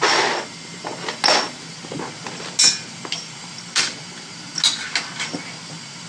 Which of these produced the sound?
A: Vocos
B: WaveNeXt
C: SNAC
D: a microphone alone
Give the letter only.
D